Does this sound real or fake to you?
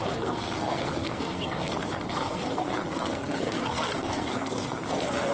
fake